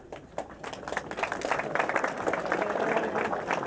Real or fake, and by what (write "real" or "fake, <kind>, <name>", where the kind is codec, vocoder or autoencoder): real